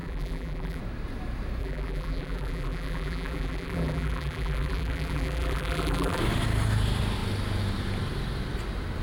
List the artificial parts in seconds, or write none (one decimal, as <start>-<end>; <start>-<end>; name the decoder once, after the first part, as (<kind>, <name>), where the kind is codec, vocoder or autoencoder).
0.0-0.8 (vocoder, BigVGAN v2); 1.6-6.2